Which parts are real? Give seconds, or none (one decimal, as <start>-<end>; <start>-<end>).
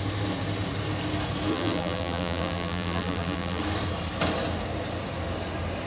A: 0.0-1.5; 3.6-5.9